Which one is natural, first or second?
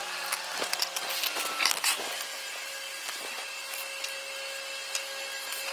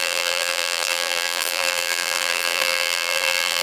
first